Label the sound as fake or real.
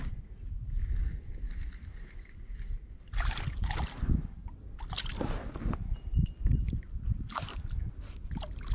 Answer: real